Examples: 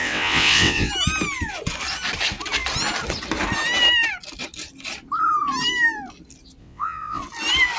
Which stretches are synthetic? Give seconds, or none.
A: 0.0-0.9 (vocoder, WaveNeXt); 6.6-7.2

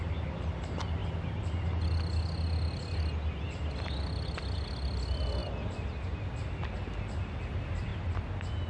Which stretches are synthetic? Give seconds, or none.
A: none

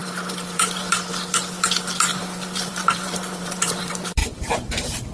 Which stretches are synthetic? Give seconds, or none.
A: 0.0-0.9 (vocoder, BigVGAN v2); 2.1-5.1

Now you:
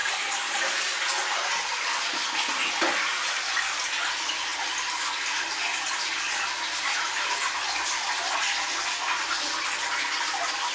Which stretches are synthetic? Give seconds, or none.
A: none